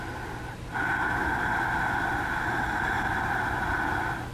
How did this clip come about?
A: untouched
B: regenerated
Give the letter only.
A